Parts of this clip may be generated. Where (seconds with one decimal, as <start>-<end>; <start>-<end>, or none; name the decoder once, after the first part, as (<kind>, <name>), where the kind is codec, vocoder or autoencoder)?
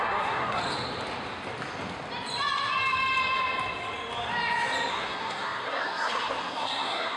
0.0-0.6 (codec, SNAC); 4.9-7.2